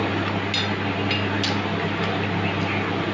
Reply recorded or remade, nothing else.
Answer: recorded